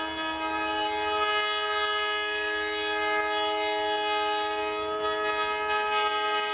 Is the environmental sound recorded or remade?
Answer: recorded